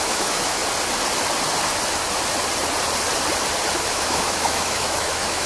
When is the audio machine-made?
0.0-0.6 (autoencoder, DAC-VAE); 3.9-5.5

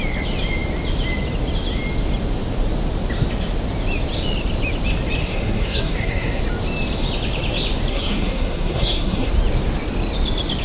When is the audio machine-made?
5.2-6.4 (codec, SNAC); 7.9-9.3

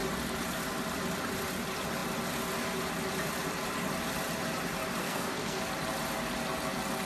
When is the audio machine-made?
5.0-5.6 (codec, SNAC)